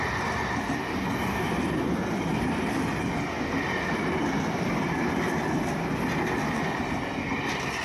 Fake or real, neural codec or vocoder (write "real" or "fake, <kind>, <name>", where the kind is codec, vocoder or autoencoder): real